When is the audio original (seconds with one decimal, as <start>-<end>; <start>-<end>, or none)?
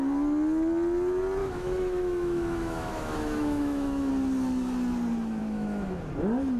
0.0-1.4; 4.1-5.4; 6.0-6.6